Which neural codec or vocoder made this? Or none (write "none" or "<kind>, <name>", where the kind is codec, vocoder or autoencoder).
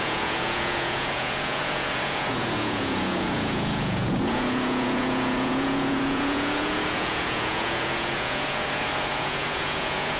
vocoder, Vocos